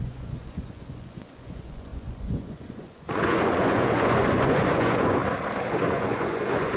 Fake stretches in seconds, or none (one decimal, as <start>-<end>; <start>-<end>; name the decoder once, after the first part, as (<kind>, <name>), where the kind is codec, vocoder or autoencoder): 0.0-5.2 (vocoder, Vocos); 5.8-6.8